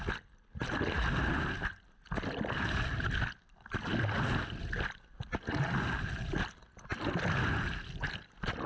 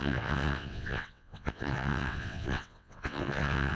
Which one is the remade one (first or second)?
second